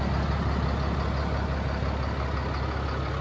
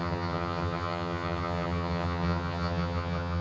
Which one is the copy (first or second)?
second